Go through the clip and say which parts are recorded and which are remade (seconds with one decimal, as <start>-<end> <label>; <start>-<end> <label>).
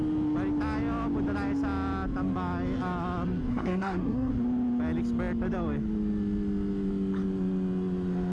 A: 0.0-3.5 recorded; 3.5-4.3 remade; 4.3-8.3 recorded